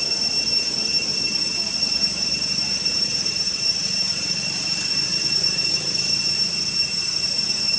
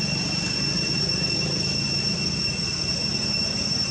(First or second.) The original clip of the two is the second